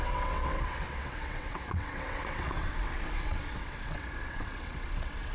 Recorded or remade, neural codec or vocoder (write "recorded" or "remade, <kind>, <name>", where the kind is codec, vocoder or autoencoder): remade, vocoder, WaveNeXt